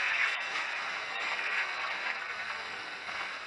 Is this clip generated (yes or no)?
yes